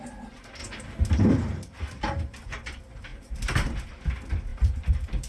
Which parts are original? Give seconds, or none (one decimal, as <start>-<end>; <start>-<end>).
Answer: 0.0-4.5